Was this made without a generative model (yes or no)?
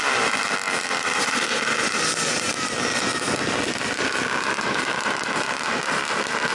yes